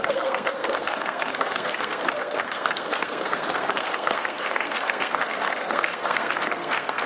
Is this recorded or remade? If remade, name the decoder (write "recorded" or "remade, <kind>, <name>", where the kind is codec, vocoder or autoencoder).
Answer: remade, codec, SNAC